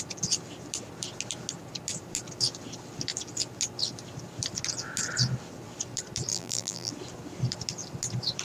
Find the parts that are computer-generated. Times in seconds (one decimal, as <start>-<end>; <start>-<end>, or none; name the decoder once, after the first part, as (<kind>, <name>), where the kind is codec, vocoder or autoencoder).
6.3-6.9 (vocoder, BigVGAN v2)